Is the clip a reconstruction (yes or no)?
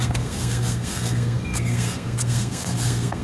yes